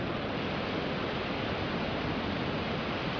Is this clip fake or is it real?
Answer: real